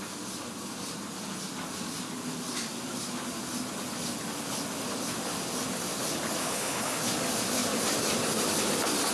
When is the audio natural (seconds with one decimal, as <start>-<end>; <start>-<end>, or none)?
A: 0.0-6.4; 7.0-9.1

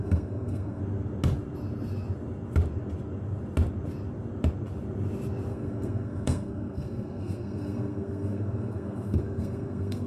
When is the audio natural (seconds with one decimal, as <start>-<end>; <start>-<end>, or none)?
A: 0.8-5.5

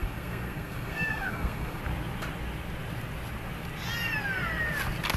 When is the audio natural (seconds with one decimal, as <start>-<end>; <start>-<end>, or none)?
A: 1.8-5.2

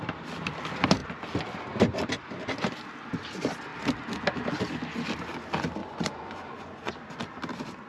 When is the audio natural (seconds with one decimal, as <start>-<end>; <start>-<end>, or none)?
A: 0.0-5.8; 6.9-7.9

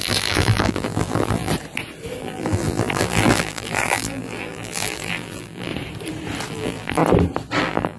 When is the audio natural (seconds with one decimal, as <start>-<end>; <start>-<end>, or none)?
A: 1.5-2.2; 5.7-6.5; 7.0-7.6

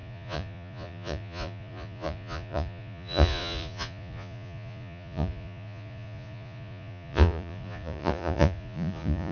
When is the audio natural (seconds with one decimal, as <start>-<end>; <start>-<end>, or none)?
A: none